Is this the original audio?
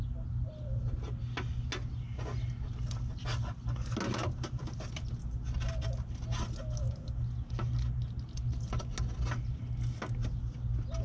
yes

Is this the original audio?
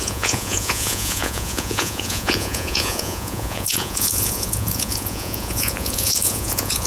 no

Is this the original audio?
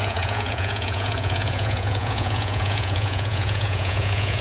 no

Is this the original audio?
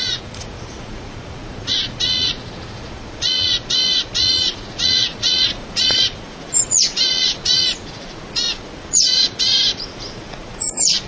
no